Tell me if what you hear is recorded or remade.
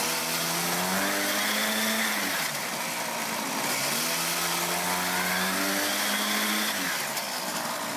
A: recorded